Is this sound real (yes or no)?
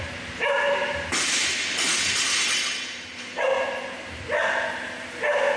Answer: yes